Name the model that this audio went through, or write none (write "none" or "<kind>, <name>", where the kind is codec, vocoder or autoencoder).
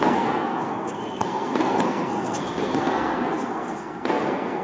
codec, SNAC